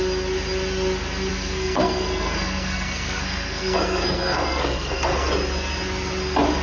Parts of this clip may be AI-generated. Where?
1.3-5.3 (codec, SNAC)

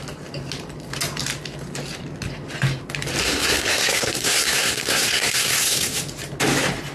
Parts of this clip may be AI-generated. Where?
3.2-6.0 (codec, SNAC)

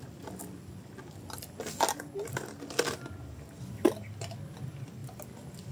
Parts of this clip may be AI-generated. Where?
none